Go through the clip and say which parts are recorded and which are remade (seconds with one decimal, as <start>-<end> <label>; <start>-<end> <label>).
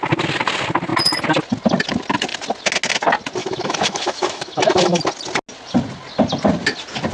0.0-3.4 recorded; 3.4-5.0 remade; 5.0-7.1 recorded